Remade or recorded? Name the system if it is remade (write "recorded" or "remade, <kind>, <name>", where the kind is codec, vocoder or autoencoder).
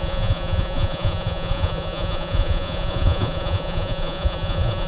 remade, vocoder, Vocos